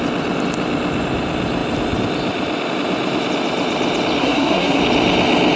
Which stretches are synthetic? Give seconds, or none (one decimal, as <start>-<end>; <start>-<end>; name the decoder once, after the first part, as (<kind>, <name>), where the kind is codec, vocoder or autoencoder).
4.2-4.8 (codec, SNAC)